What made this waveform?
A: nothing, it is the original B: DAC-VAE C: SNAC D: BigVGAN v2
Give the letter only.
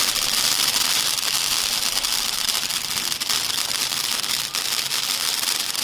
A